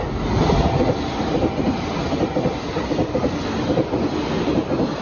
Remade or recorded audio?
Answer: recorded